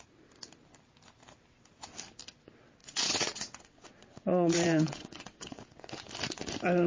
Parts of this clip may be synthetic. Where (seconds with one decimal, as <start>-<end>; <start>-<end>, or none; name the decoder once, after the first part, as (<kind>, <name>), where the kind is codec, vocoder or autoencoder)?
2.8-6.1 (vocoder, WaveNeXt)